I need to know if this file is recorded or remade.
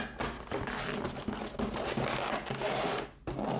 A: recorded